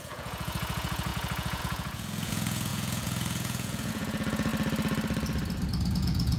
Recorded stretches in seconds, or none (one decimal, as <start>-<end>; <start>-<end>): 4.5-5.9